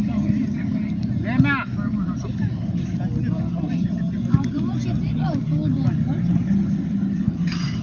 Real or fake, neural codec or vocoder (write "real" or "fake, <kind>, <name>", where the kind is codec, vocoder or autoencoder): real